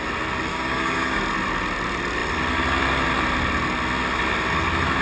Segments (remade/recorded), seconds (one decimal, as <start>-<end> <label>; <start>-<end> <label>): 0.0-0.5 recorded; 0.5-1.2 remade; 1.2-5.0 recorded